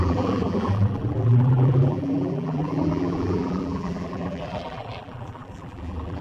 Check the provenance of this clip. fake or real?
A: fake